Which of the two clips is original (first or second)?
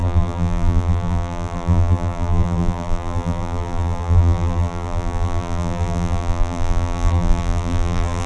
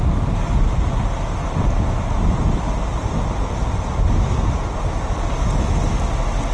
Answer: second